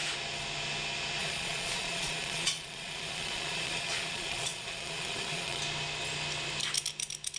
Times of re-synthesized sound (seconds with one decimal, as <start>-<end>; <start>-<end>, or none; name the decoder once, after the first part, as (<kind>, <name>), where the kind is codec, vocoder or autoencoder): 1.2-5.6 (vocoder, Vocos)